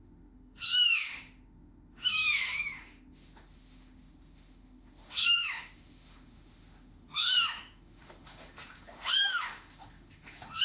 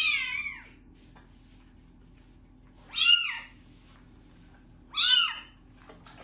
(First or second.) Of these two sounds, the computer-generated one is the first